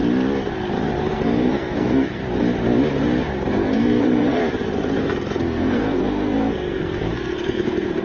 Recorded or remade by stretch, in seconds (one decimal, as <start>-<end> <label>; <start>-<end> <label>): 0.0-1.1 recorded; 1.1-2.2 remade; 2.2-3.5 recorded; 3.5-4.4 remade; 4.4-5.0 recorded; 5.0-8.0 remade